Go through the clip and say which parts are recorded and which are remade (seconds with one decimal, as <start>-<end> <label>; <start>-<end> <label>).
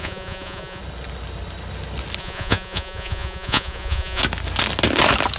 0.0-0.8 remade; 0.8-2.2 recorded; 2.2-4.2 remade; 4.2-5.4 recorded